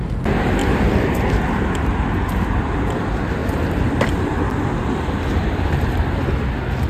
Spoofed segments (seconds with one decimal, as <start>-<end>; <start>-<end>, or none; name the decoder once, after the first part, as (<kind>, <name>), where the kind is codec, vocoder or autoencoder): 0.6-1.3 (vocoder, BigVGAN v2); 3.4-5.3